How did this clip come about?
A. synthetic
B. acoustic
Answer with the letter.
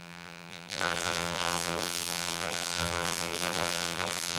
A